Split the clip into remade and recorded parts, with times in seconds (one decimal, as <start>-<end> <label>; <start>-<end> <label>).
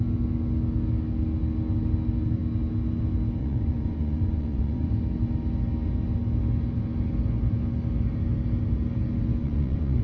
0.0-3.4 recorded; 3.4-4.9 remade; 4.9-9.4 recorded; 9.4-10.0 remade